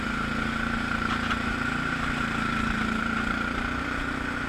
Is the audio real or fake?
fake